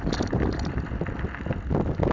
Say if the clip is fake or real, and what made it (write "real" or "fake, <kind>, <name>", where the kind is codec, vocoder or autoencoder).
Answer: real